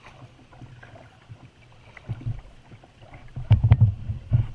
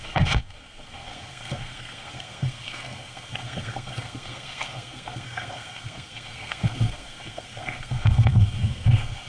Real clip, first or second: first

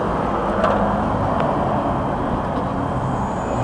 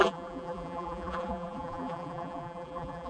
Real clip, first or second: first